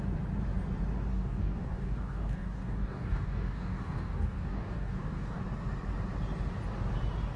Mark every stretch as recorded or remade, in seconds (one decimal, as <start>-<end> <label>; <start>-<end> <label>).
0.0-1.1 recorded; 1.1-5.4 remade; 5.4-7.4 recorded